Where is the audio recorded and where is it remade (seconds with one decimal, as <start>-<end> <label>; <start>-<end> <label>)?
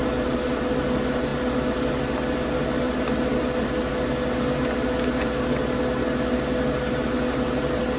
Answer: 0.0-8.0 recorded